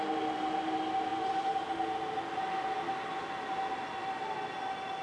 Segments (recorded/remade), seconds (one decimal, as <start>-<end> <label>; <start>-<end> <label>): 0.0-5.0 recorded